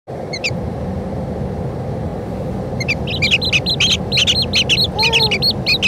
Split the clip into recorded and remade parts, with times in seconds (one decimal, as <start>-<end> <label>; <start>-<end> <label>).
0.0-5.9 recorded